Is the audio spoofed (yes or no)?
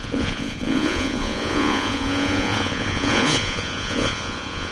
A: yes